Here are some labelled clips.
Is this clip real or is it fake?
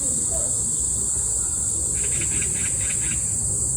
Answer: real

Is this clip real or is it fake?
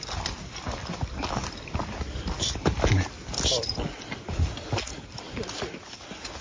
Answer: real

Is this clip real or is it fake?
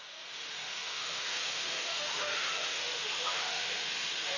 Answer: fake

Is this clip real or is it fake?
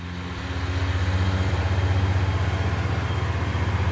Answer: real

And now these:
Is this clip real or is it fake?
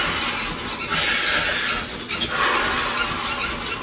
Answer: real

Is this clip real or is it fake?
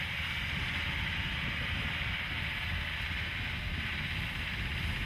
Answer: real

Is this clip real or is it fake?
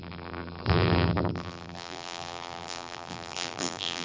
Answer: fake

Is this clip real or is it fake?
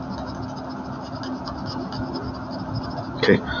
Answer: real